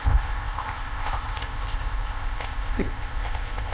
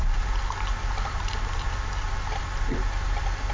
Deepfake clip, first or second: first